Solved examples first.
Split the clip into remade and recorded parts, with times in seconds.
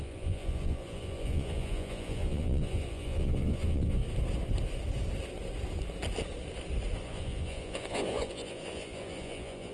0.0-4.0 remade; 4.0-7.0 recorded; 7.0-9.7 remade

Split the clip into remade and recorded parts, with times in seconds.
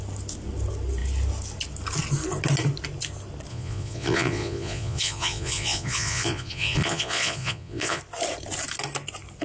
0.0-3.5 recorded; 3.5-8.0 remade; 8.0-9.4 recorded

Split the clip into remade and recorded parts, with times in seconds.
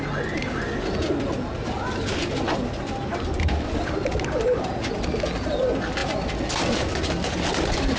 0.0-8.0 recorded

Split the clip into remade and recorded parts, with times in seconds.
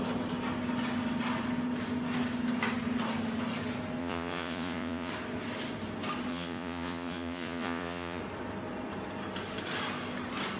0.0-4.0 recorded; 4.0-5.1 remade; 5.1-6.3 recorded; 6.3-8.2 remade; 8.2-10.6 recorded